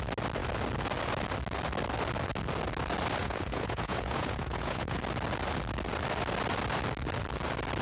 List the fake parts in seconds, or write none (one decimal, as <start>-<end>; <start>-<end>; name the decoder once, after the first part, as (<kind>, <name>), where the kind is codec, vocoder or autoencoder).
3.2-5.0 (vocoder, Vocos)